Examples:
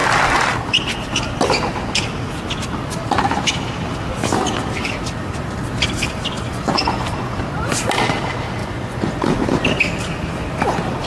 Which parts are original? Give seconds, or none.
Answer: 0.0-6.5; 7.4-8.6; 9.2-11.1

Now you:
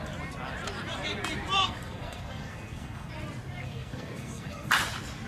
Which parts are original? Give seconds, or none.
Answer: 0.0-1.6; 3.1-3.6; 4.7-5.3

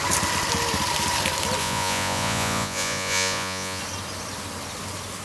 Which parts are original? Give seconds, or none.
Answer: 0.0-1.6; 3.8-5.2

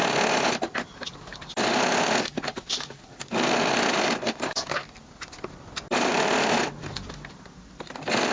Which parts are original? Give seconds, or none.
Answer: 0.0-0.8